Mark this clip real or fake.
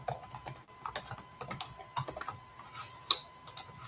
real